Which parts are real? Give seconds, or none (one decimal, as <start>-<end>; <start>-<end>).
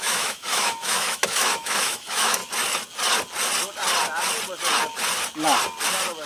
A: 2.4-6.3